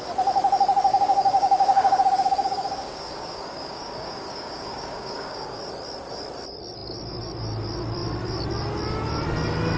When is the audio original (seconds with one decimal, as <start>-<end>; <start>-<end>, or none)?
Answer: 0.0-0.9; 5.6-9.8